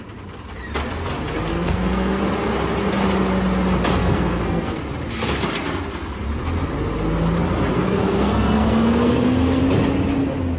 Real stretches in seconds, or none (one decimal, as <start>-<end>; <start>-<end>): 0.0-1.5; 2.2-4.0; 4.8-7.7; 9.6-10.6